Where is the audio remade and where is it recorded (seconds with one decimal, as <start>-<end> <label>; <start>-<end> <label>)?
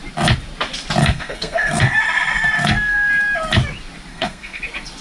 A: 0.0-1.0 recorded; 1.0-2.0 remade; 2.0-2.6 recorded; 2.6-3.1 remade; 3.1-4.1 recorded; 4.1-4.6 remade; 4.6-5.0 recorded